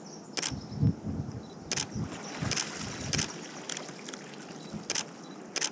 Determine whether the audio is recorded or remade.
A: recorded